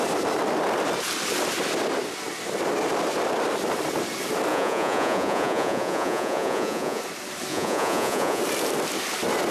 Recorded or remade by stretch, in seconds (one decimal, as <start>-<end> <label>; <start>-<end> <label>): 0.0-4.5 recorded; 4.5-7.0 remade; 7.0-7.5 recorded; 7.5-8.4 remade; 8.4-9.5 recorded